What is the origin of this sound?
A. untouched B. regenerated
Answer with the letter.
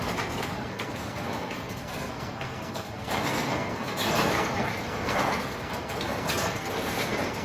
B